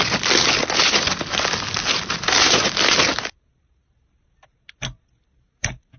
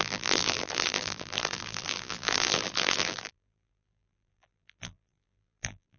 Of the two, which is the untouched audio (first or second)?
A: first